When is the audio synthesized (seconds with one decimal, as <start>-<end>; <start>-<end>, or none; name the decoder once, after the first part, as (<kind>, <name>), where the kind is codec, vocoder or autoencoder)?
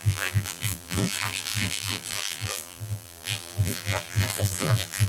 0.0-5.1 (vocoder, BigVGAN v2)